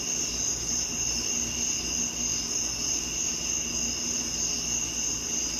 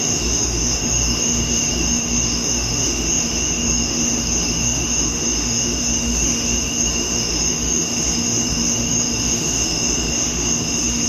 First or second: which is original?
first